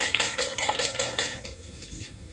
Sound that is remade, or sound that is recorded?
remade